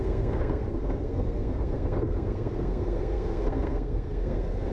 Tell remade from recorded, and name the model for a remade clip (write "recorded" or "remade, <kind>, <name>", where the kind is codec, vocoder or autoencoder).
remade, codec, SNAC